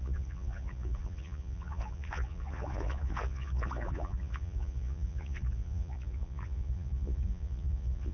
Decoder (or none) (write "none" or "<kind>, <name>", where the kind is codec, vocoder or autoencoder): vocoder, Vocos